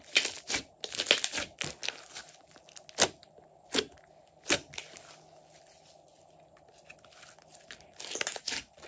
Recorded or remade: recorded